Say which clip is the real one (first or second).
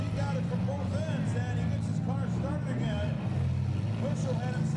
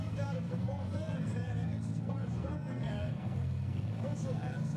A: first